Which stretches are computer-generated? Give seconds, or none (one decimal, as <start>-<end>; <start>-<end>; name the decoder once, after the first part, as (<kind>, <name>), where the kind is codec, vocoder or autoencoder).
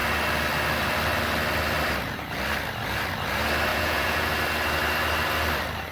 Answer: 3.7-4.3 (vocoder, Vocos)